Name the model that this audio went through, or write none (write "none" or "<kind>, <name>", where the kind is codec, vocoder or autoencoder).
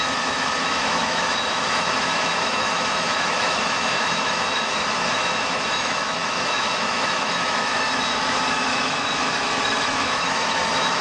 autoencoder, DAC-VAE